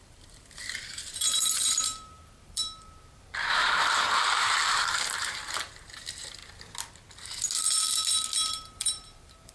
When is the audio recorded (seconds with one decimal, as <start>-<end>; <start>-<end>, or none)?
6.4-8.5